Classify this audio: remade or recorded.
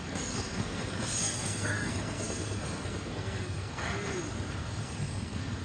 remade